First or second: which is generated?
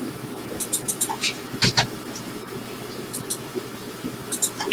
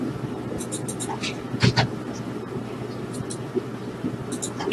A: first